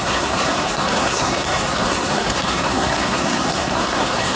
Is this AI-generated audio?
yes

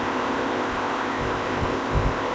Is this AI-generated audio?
yes